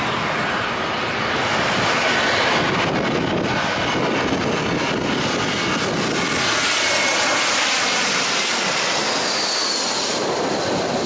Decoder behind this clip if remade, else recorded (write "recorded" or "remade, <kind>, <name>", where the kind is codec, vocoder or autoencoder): recorded